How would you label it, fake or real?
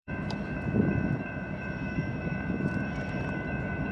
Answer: fake